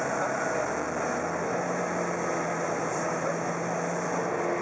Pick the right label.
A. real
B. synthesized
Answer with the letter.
A